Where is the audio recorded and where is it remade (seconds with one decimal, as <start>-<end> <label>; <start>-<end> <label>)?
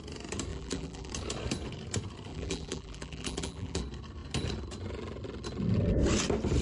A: 0.0-0.5 recorded; 0.5-1.1 remade; 1.1-2.3 recorded; 2.3-3.8 remade; 3.8-6.6 recorded